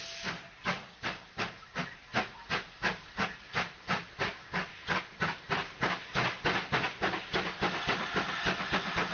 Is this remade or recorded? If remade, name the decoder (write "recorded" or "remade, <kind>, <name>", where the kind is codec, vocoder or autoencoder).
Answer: recorded